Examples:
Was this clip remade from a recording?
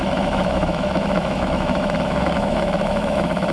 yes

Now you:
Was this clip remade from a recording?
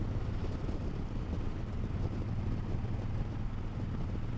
no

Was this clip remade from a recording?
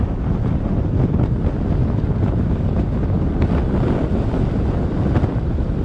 no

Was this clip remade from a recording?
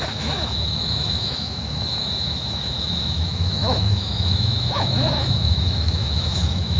yes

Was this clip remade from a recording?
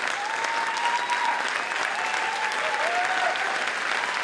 no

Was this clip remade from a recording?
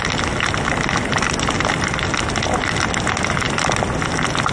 no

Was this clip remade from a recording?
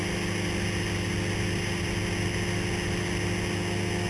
no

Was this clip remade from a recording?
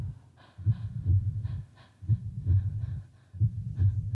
no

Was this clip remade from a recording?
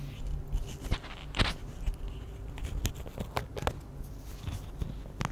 no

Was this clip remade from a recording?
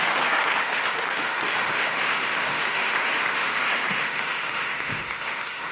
yes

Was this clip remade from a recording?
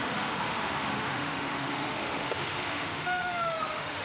yes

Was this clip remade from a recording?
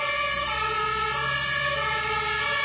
no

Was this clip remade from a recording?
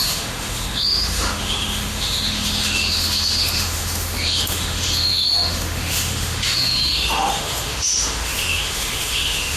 yes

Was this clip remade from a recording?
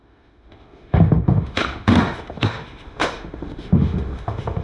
yes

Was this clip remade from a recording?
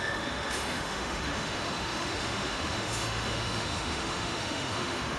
yes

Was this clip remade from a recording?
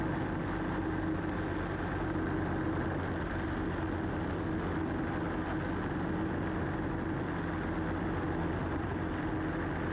no